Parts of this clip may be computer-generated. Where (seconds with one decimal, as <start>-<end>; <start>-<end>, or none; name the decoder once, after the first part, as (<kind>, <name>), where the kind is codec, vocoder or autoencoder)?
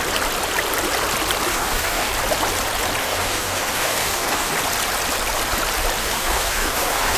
1.5-2.1 (codec, DAC); 3.0-4.5; 6.0-7.2